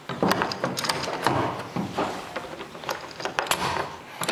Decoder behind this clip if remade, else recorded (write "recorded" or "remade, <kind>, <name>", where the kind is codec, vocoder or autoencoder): recorded